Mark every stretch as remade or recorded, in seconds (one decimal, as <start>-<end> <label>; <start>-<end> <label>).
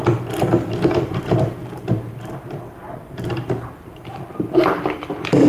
0.0-0.9 recorded; 0.9-5.5 remade